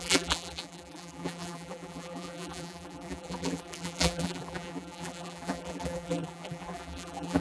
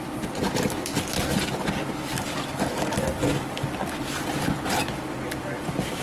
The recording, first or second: second